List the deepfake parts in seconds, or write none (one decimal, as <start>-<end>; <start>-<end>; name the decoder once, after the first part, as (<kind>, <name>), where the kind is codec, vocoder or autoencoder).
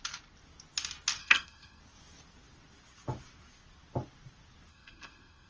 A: 1.2-1.8 (codec, SNAC); 4.7-5.5